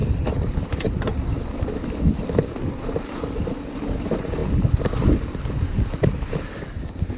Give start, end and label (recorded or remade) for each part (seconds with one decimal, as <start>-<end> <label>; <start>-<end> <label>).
0.0-4.4 remade; 4.4-5.5 recorded; 5.5-7.2 remade